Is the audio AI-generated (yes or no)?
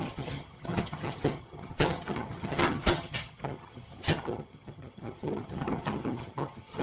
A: yes